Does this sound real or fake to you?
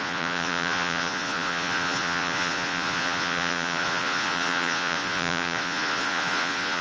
fake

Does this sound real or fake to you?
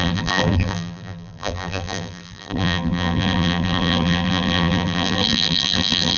fake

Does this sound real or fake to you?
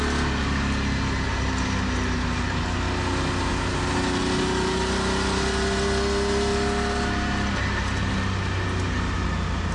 real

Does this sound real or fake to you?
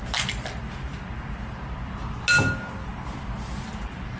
real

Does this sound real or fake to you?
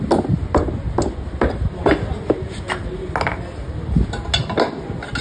real